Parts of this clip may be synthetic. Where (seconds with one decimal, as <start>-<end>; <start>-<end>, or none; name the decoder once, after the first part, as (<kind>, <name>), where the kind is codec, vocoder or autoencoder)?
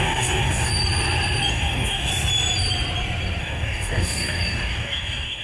0.0-0.7 (codec, DAC); 1.5-2.1; 3.4-5.4